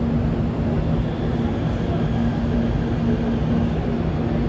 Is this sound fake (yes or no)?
no